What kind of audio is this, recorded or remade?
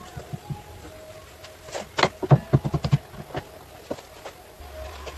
recorded